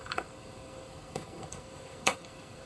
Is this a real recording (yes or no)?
no